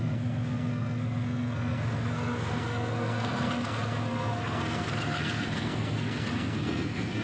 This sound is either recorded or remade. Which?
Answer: remade